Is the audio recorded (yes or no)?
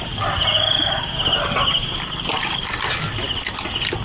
yes